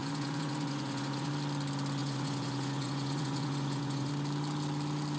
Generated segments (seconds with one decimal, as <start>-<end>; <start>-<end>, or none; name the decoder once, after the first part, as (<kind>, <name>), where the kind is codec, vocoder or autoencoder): 0.0-1.3 (vocoder, Vocos); 2.0-4.1